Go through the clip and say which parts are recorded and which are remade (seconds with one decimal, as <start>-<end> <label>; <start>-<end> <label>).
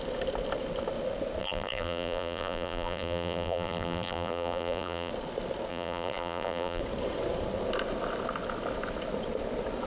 0.0-1.4 recorded; 1.4-5.1 remade; 5.1-5.7 recorded; 5.7-6.8 remade; 6.8-9.9 recorded